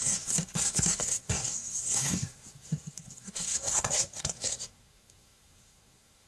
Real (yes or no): no